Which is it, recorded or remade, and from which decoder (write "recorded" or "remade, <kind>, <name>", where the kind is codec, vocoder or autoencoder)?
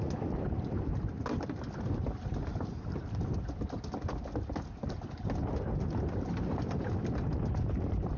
recorded